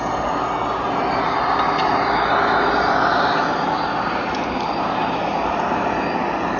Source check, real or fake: real